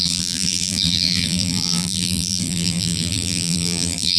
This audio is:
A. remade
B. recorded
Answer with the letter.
A